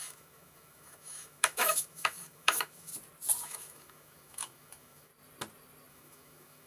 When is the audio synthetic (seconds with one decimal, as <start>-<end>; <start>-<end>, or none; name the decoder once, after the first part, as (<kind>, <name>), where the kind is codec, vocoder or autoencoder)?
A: 0.0-2.9 (autoencoder, DAC-VAE); 3.4-5.1; 5.9-6.7